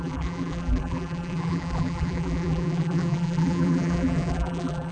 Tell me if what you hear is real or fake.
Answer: fake